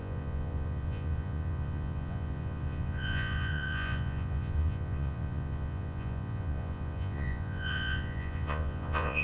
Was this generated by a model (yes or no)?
yes